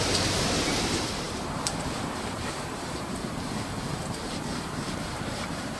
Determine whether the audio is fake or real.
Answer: fake